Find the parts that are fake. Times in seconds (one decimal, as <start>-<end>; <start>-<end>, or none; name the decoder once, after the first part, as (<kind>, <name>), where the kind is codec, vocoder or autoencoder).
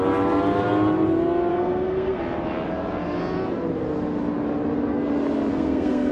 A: 1.5-2.2 (codec, SNAC); 5.5-6.1